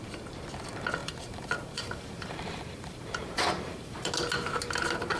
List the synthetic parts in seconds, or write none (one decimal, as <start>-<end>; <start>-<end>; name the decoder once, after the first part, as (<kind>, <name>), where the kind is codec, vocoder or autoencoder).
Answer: 1.0-4.1 (vocoder, BigVGAN v2)